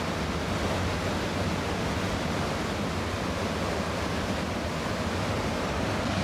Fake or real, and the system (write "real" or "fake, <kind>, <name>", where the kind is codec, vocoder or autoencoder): real